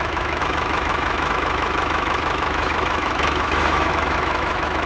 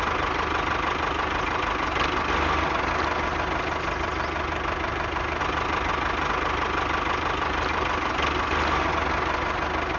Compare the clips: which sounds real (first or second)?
second